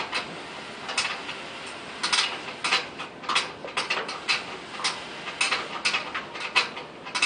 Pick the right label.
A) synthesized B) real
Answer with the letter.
B